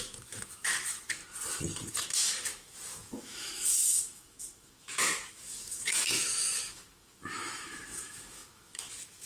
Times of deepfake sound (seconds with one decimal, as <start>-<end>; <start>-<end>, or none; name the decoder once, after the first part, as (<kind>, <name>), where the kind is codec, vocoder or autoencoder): 0.0-1.2 (autoencoder, DAC-VAE); 1.9-9.3